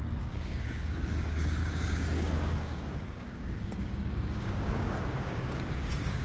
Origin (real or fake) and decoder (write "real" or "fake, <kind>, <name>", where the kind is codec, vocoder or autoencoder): fake, codec, DAC